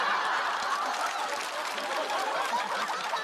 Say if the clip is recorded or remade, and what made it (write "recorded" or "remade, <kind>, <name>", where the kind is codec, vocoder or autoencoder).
recorded